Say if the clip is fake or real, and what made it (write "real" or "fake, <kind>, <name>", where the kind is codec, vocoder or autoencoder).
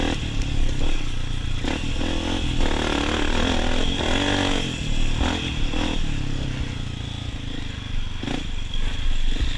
real